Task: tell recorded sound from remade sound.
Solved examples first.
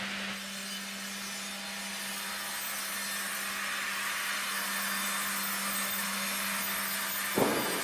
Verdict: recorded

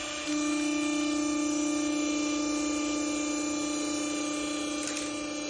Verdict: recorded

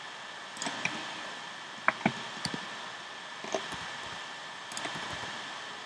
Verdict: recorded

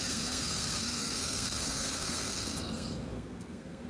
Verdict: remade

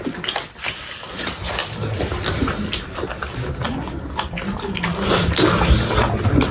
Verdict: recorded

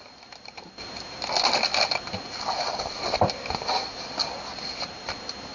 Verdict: recorded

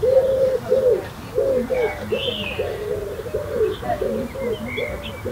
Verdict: recorded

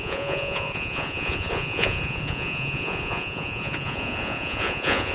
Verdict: remade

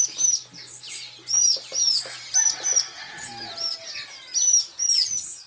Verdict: recorded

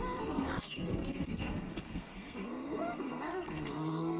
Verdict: remade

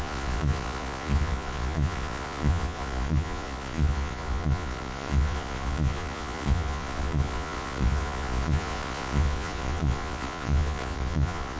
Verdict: remade